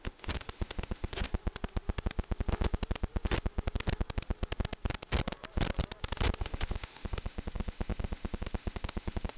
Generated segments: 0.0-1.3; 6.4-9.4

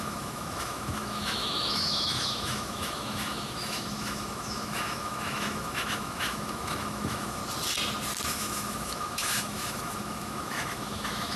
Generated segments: 0.0-7.4; 8.3-11.4

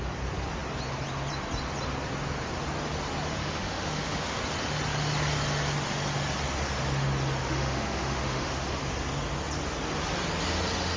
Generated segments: 3.4-4.4; 7.4-8.8

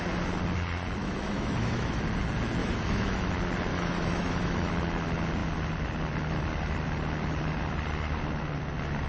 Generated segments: 1.0-2.0; 2.6-3.3; 3.7-4.7

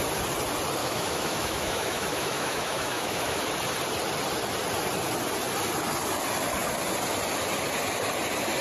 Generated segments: 0.8-3.4